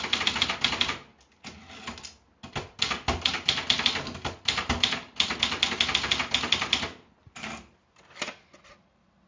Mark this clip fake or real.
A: real